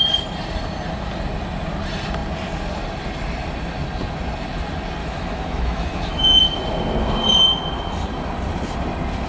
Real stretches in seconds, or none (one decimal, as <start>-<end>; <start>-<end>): 0.0-5.0; 6.4-9.3